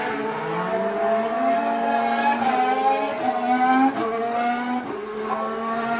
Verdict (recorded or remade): recorded